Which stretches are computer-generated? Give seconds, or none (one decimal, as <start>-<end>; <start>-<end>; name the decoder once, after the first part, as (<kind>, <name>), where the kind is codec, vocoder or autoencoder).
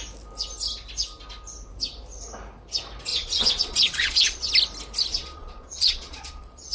3.1-4.5 (vocoder, Vocos); 5.1-6.7